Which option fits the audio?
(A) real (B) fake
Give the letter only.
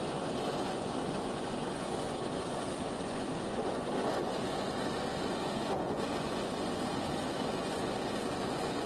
B